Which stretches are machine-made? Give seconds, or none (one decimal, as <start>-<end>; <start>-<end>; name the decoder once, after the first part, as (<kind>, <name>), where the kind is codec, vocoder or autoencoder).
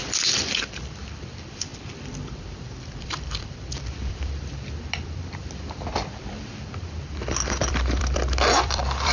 0.0-9.1 (vocoder, BigVGAN v2)